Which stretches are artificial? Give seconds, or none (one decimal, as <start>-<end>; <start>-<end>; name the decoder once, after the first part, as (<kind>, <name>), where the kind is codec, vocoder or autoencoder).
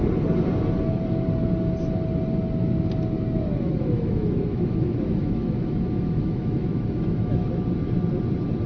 3.5-7.5 (autoencoder, DAC-VAE)